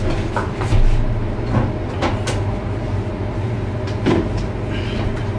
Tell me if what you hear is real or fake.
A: real